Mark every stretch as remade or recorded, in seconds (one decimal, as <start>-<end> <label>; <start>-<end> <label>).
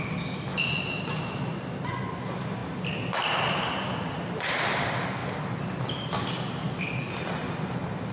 0.0-8.1 recorded